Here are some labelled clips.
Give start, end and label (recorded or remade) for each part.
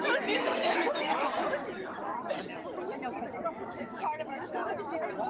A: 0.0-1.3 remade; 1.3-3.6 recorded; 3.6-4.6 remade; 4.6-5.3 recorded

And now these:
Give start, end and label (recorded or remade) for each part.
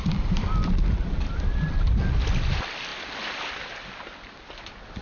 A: 0.0-5.0 recorded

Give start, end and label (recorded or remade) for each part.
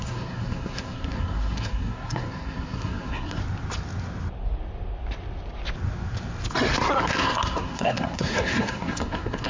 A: 0.0-3.4 remade; 3.4-7.0 recorded; 7.0-9.5 remade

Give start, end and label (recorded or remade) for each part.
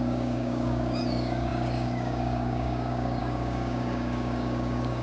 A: 0.0-5.0 remade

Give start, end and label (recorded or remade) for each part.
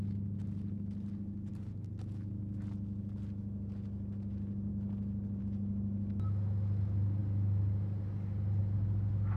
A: 0.0-9.4 recorded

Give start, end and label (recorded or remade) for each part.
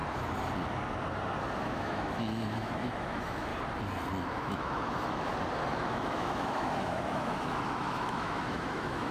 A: 0.0-1.6 recorded; 1.6-3.5 remade; 3.5-4.4 recorded; 4.4-5.3 remade; 5.3-5.9 recorded; 5.9-9.1 remade